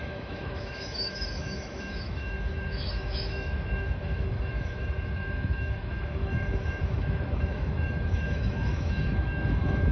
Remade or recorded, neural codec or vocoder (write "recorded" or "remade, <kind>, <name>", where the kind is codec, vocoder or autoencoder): remade, autoencoder, DAC-VAE